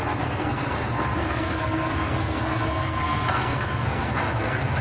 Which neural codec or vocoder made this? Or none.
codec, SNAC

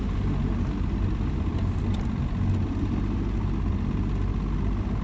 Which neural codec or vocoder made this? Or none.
none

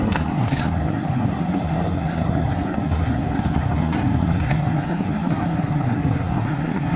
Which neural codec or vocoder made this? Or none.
codec, SNAC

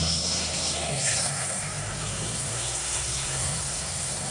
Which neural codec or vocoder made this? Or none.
codec, SNAC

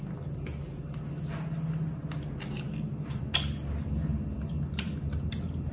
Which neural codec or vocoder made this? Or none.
none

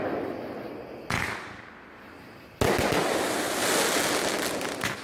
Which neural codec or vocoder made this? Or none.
none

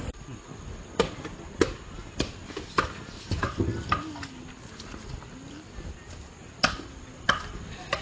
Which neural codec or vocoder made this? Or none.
none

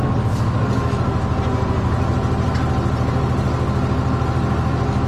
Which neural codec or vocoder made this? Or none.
none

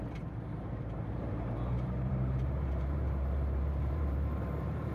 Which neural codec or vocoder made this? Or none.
vocoder, BigVGAN v2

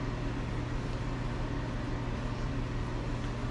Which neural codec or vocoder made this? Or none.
none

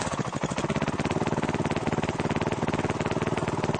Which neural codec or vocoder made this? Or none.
none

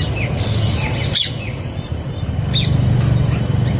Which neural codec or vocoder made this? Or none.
none